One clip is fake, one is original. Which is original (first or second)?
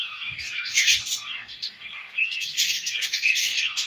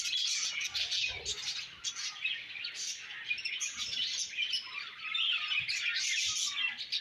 second